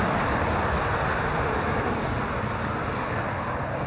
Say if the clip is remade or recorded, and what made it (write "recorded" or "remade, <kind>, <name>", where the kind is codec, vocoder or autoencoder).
recorded